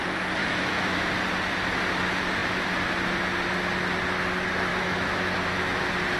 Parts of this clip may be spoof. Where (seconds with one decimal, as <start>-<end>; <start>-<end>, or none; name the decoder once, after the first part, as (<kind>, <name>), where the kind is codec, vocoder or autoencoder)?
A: 0.4-1.1 (autoencoder, DAC-VAE); 4.7-5.8